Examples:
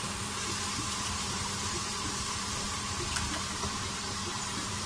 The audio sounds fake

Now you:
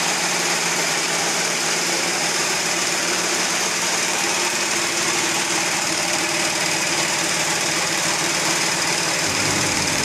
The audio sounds fake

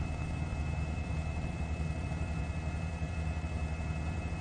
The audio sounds fake